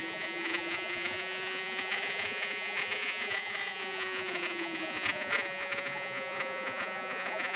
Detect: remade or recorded remade